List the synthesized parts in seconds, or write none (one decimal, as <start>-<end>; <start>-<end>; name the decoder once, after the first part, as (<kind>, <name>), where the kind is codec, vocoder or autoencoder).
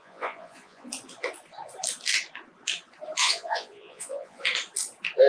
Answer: 0.0-0.9 (vocoder, Vocos); 3.2-4.4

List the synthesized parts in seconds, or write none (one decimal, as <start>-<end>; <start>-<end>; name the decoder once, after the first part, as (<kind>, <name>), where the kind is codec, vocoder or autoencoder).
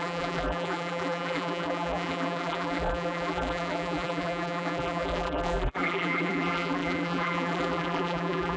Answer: 0.0-8.6 (vocoder, BigVGAN v2)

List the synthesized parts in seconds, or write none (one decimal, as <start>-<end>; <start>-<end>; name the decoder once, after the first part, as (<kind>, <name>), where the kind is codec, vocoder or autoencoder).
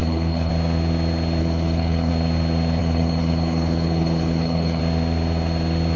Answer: 0.0-0.5 (codec, HILCodec); 1.4-2.1; 2.8-4.8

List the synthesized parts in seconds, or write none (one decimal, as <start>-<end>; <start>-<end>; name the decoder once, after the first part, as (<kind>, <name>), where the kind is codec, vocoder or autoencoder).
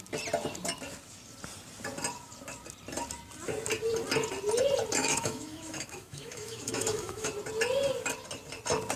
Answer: 5.0-7.3 (autoencoder, DAC-VAE)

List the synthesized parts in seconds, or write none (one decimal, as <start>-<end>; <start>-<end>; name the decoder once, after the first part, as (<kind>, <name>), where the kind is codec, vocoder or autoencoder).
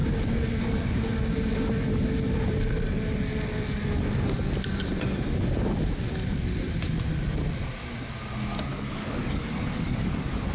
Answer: 8.7-10.5 (codec, DAC)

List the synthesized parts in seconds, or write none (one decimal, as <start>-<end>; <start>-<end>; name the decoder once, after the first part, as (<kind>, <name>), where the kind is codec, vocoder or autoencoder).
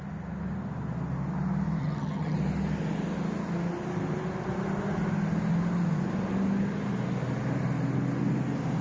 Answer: 1.8-2.4 (vocoder, HiFi-GAN)